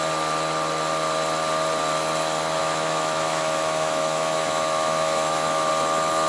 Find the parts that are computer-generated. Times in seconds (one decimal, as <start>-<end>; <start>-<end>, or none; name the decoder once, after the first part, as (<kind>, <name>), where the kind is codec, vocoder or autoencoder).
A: 2.6-5.7 (autoencoder, DAC-VAE)